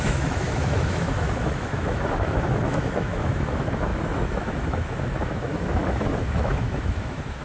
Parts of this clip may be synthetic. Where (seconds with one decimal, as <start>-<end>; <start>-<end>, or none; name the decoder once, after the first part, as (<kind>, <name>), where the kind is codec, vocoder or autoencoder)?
0.0-7.4 (autoencoder, DAC-VAE)